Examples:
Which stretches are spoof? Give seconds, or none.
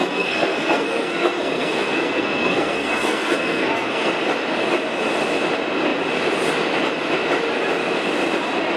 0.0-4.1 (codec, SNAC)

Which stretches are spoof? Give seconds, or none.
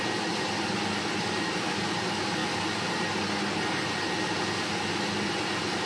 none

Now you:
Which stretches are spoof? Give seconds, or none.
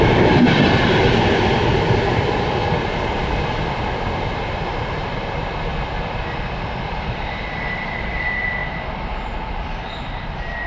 0.0-8.6 (vocoder, BigVGAN v2); 9.6-10.7